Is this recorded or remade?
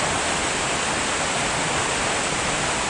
recorded